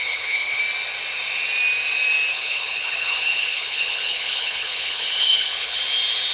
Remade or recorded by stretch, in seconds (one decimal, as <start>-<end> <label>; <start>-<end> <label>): 0.0-0.6 remade; 0.6-2.3 recorded; 2.3-5.8 remade; 5.8-6.3 recorded